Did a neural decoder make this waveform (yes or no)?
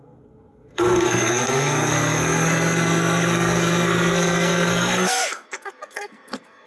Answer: yes